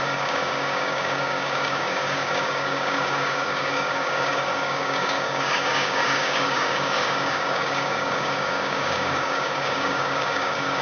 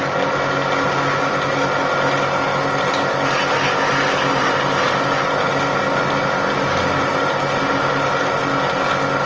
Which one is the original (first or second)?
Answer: second